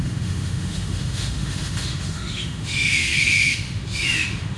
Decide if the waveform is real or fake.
fake